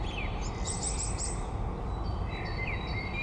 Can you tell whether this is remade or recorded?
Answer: recorded